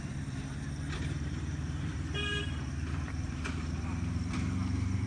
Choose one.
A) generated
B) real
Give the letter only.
A